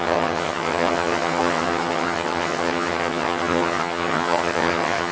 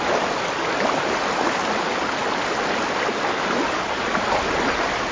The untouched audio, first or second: second